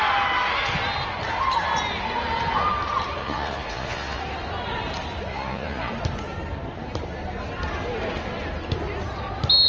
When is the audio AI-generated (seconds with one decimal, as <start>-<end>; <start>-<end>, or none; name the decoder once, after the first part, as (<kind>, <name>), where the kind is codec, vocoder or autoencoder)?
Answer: 3.2-4.2 (vocoder, Vocos); 5.3-5.9